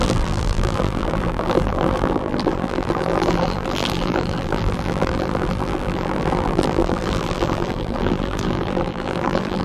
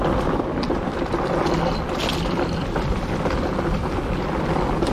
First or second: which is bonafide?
second